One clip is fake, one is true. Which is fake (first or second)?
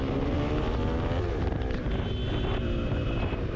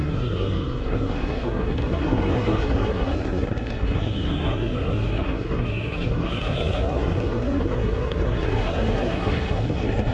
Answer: second